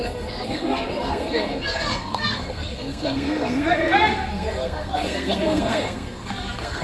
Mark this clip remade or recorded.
remade